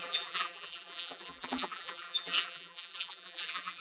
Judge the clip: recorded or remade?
remade